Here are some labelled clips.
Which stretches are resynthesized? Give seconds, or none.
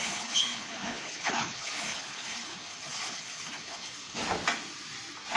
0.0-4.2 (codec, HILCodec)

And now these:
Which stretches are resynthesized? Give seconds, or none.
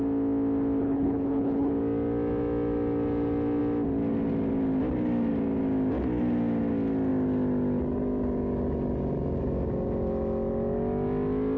0.8-1.7 (codec, HILCodec)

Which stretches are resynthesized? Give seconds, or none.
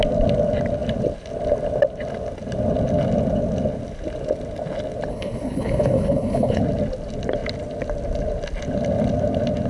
5.1-6.6 (codec, HILCodec)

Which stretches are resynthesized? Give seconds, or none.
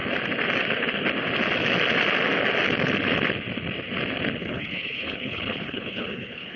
4.4-6.6 (codec, HILCodec)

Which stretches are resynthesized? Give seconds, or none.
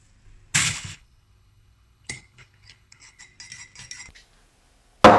0.6-3.2 (codec, HILCodec)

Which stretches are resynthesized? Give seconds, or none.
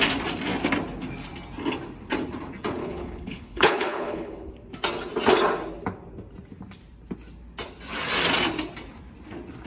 2.8-4.5 (codec, HILCodec)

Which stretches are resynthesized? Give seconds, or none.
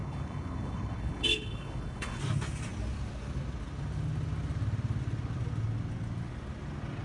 0.0-2.2 (codec, HILCodec)